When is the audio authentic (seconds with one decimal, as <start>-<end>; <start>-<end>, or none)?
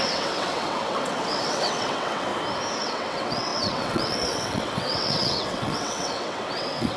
2.3-2.8